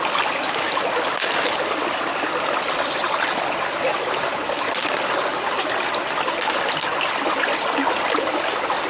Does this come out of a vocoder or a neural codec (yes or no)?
no